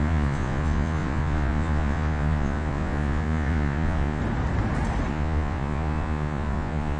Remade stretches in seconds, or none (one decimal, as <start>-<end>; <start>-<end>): 0.0-4.2; 5.1-7.0